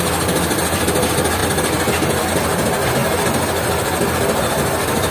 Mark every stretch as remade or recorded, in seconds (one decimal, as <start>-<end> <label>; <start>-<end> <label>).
0.0-5.1 recorded